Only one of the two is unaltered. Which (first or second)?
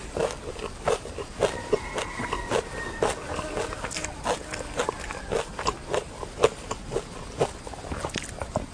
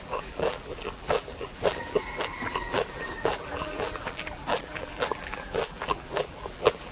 first